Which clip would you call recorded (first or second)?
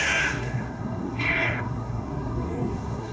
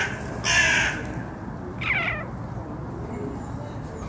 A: second